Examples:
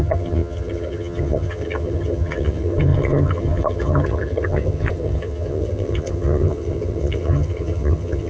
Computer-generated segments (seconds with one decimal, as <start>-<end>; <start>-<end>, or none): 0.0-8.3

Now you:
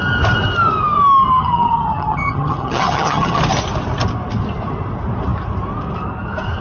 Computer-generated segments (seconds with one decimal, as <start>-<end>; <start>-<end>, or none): 1.3-3.4

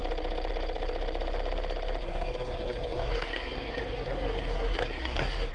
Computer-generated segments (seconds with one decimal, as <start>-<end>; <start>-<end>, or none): 2.0-5.5